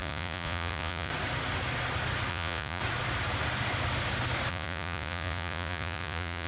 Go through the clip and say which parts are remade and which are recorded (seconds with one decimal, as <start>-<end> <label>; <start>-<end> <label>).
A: 0.0-1.1 remade; 1.1-2.3 recorded; 2.3-2.8 remade; 2.8-4.5 recorded; 4.5-6.5 remade